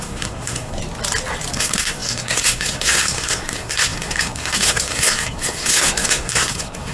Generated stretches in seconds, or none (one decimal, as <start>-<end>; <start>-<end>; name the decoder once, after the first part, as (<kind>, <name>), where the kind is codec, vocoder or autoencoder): 0.0-0.8 (codec, SNAC); 1.5-6.9